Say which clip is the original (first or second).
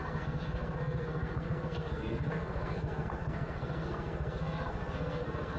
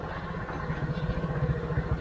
second